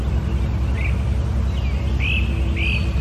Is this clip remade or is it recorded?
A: recorded